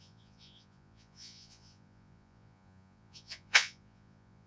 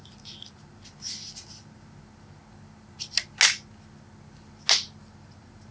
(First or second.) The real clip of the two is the second